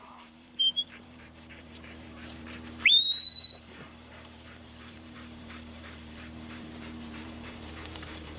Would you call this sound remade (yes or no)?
yes